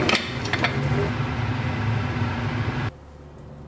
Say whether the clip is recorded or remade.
recorded